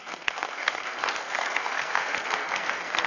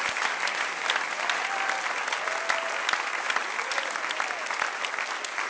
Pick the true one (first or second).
second